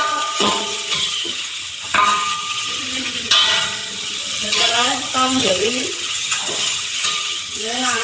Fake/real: fake